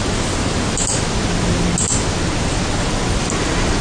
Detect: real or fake real